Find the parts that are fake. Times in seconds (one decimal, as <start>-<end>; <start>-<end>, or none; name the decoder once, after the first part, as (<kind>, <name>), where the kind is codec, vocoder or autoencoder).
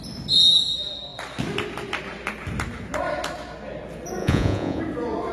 4.2-4.8 (vocoder, Vocos)